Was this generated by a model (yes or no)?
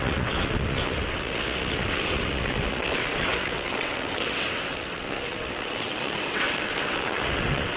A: yes